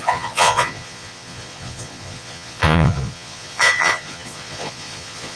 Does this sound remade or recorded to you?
remade